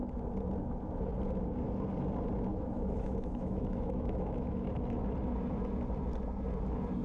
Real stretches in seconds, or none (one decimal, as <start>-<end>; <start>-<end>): 0.0-2.5; 4.7-7.0